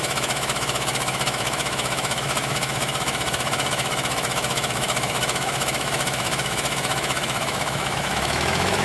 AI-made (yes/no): yes